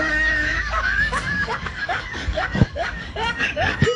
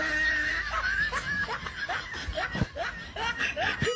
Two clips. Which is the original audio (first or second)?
second